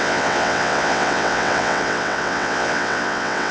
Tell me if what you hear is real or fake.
fake